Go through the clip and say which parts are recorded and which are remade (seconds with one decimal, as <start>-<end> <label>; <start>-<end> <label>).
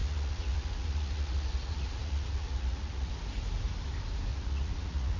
0.0-3.1 remade; 3.1-4.3 recorded; 4.3-5.2 remade